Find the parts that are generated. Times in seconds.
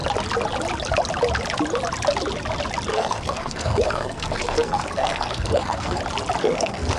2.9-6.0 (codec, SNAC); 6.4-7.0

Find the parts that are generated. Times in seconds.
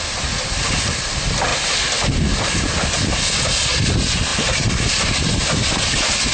none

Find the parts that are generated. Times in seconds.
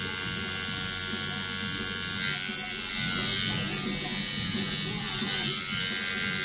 none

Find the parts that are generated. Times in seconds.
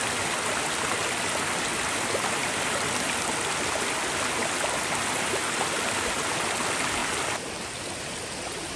none